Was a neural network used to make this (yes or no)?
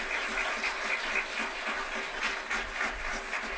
no